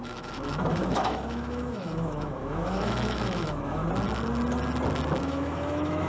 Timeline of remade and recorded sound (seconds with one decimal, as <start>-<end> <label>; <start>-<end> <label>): 0.0-3.8 remade; 3.8-5.2 recorded; 5.2-6.1 remade